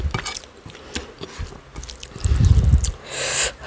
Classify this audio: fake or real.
real